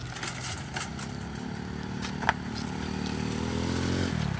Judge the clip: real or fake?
real